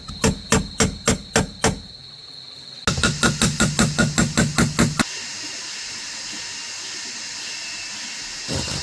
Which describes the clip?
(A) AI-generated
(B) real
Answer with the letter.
B